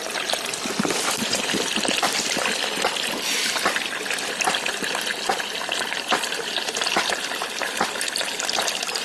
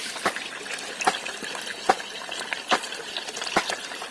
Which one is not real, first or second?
first